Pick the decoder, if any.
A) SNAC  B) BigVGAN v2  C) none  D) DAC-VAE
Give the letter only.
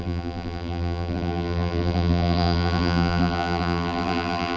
B